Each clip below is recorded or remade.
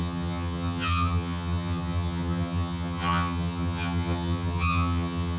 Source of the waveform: remade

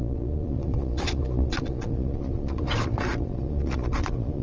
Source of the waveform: remade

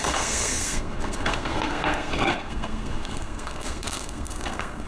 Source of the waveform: remade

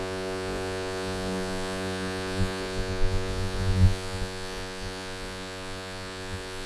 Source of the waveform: remade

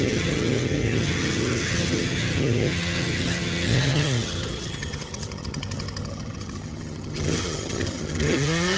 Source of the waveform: remade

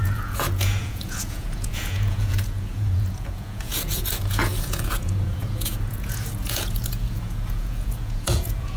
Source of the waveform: remade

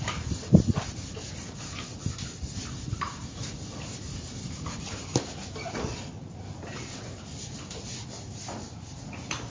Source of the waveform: recorded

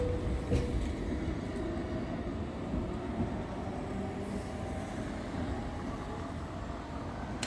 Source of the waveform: recorded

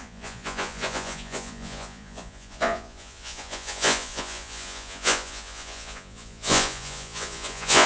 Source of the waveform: remade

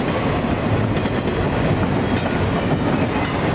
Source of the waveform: recorded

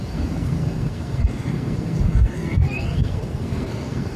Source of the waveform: remade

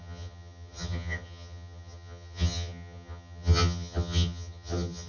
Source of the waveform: remade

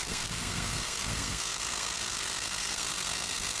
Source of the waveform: remade